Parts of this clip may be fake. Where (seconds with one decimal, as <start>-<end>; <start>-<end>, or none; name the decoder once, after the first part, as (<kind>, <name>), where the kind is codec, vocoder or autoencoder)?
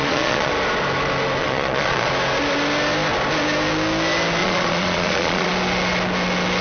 0.0-0.5 (vocoder, Vocos); 1.4-2.1; 4.4-5.5